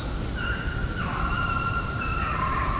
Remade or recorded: remade